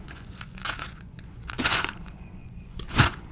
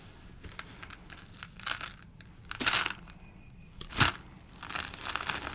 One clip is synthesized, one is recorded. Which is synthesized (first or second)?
first